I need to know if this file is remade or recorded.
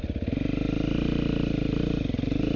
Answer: recorded